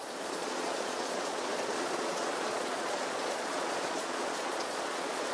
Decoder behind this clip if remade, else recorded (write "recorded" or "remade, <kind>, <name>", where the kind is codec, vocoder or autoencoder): remade, vocoder, Vocos